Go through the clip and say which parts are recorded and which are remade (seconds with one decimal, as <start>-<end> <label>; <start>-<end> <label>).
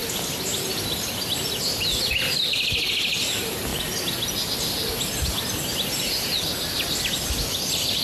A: 0.0-8.0 recorded